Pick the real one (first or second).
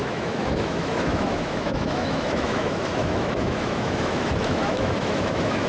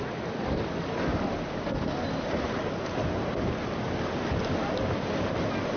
second